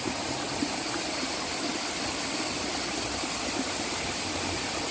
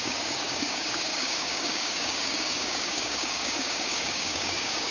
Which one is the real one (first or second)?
first